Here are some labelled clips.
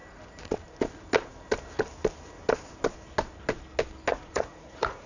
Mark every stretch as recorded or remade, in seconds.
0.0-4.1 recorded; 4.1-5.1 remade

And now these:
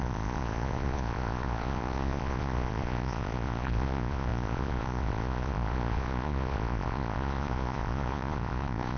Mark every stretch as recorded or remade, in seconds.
0.0-9.0 remade

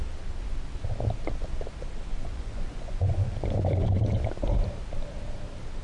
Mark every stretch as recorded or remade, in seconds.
0.0-2.1 recorded; 2.1-4.0 remade; 4.0-5.8 recorded

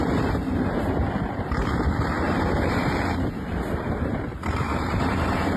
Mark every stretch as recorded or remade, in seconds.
0.0-1.2 recorded; 1.2-5.6 remade

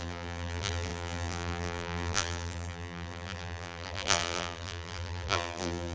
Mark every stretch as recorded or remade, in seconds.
0.0-5.9 remade